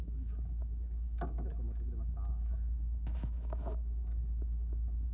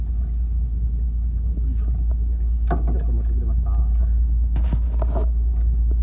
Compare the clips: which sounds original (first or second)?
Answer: second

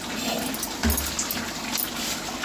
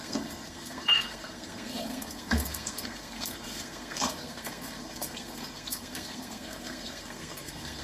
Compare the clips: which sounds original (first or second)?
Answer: first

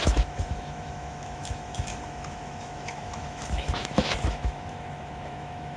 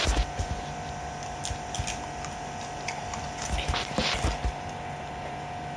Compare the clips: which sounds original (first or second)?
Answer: second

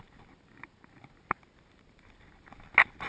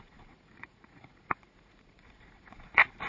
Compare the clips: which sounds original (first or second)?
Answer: first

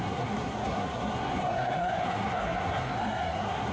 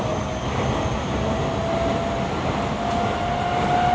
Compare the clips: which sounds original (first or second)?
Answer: second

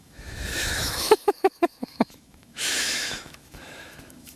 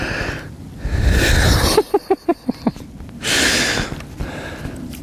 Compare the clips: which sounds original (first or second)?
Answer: second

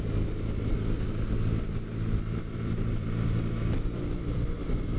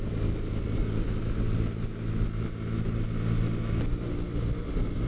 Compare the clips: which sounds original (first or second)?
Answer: second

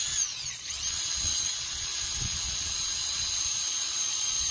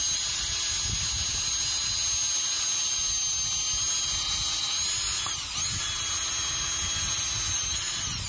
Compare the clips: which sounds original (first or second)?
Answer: second